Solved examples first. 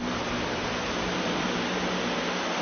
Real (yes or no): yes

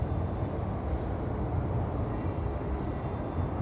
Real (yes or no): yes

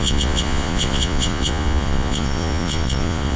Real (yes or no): no